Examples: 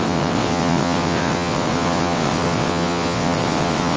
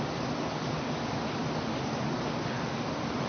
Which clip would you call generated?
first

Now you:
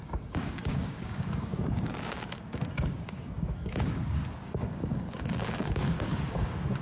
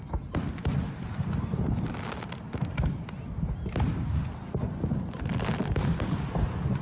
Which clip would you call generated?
first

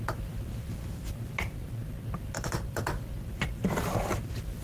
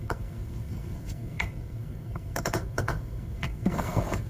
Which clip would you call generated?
second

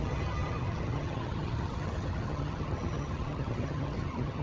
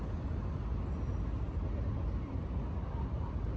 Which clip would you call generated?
first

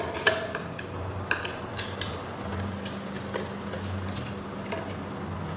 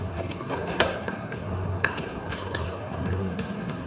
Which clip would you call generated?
second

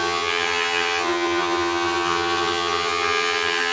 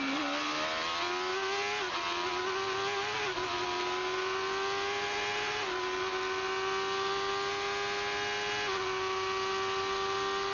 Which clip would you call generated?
first